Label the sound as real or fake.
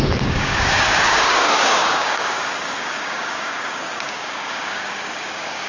fake